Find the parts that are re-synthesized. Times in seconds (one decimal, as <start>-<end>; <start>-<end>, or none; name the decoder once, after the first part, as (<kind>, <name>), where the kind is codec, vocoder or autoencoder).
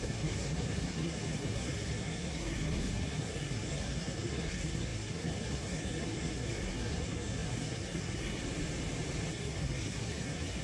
0.0-8.4 (codec, SNAC); 9.3-10.6